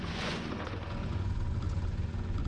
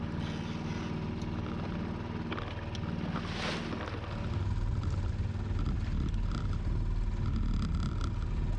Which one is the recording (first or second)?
second